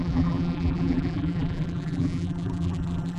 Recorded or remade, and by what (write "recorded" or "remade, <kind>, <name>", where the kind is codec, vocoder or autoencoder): remade, vocoder, BigVGAN v2